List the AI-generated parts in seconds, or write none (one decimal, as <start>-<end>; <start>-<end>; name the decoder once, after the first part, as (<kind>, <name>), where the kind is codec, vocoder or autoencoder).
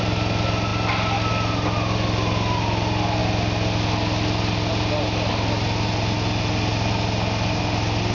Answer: none